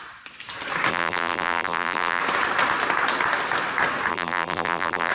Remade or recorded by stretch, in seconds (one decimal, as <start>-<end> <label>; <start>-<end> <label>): 0.0-0.9 recorded; 0.9-2.2 remade; 2.2-4.1 recorded; 4.1-5.1 remade